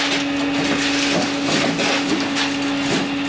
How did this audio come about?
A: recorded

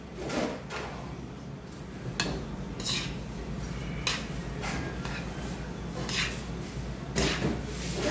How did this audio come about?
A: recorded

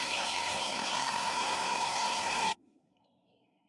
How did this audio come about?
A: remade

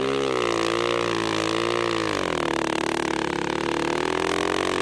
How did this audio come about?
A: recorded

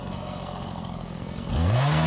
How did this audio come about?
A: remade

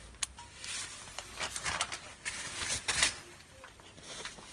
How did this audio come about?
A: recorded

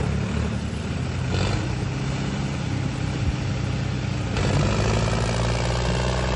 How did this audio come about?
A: recorded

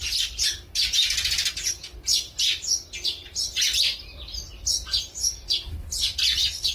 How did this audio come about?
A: recorded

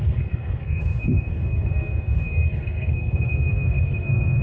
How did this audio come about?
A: remade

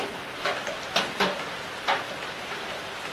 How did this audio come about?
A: recorded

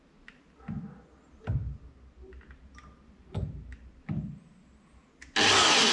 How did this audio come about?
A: recorded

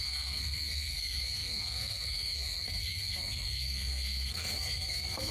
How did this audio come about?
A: remade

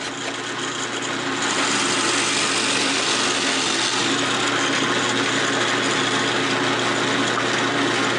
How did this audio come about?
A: recorded